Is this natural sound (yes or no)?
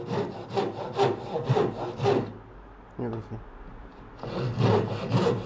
yes